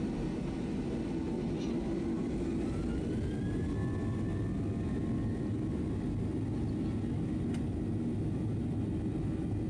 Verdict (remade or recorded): recorded